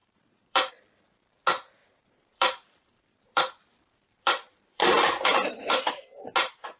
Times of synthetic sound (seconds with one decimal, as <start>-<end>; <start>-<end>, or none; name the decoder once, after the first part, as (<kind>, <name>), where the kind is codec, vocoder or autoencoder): 0.0-0.7 (vocoder, BigVGAN v2); 1.8-5.9